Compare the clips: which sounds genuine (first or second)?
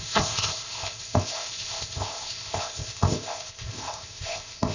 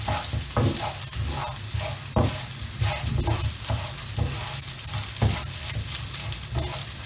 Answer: second